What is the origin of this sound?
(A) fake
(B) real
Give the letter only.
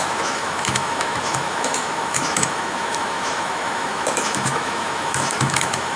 A